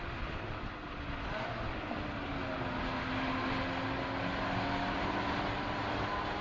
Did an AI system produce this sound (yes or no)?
no